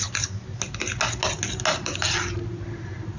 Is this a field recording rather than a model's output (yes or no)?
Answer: yes